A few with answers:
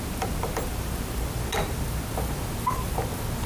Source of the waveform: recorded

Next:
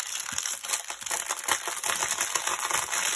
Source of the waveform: recorded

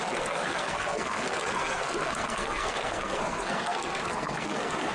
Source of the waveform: remade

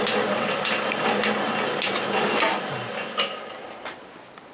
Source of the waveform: recorded